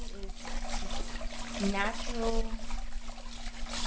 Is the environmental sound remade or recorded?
recorded